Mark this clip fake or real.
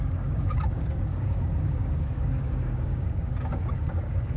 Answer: fake